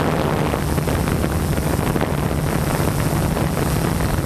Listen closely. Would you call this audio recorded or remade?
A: recorded